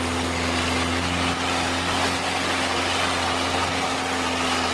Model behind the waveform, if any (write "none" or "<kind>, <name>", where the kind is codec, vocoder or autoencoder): none